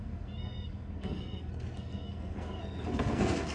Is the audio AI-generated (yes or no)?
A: yes